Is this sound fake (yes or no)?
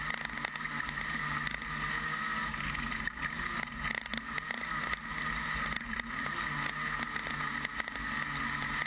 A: no